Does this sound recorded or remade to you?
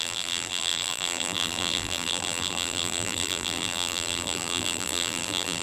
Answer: remade